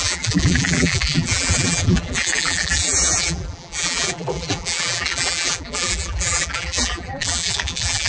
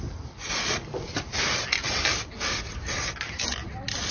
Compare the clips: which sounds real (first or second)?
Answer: second